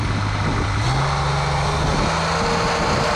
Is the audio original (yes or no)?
yes